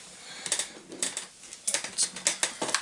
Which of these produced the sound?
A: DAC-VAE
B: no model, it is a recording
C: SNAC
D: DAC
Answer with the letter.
B